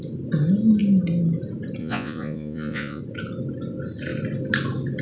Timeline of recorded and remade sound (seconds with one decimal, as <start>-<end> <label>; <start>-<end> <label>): 0.0-1.8 recorded; 1.8-3.0 remade; 3.0-5.0 recorded